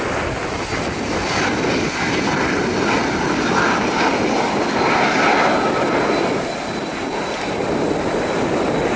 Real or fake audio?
real